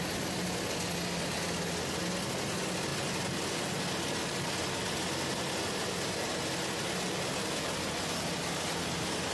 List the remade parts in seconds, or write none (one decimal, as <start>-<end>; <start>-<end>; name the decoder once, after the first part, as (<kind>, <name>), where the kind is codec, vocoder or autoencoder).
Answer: none